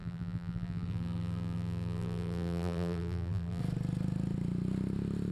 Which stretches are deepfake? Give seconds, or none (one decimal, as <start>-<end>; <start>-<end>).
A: 0.0-3.6